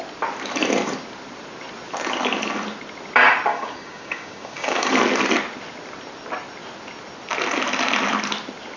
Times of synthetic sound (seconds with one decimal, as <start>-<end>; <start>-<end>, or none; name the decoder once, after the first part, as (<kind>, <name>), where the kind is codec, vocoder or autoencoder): 3.5-4.9 (codec, DAC)